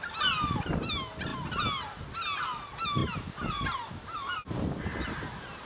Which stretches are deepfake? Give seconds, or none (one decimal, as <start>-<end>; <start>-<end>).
none